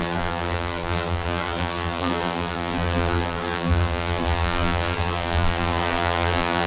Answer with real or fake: fake